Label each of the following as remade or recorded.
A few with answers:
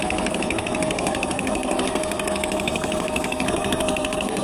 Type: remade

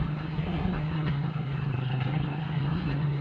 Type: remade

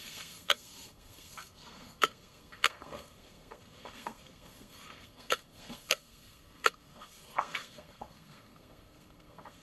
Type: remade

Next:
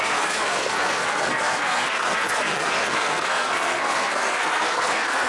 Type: remade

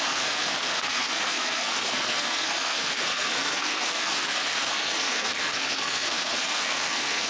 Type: remade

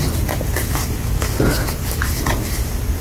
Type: recorded